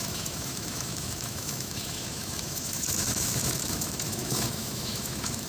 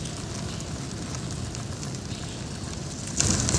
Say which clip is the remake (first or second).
first